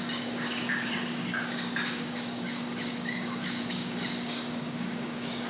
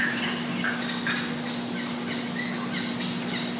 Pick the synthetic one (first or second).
first